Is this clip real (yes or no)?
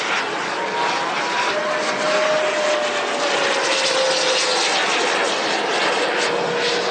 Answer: yes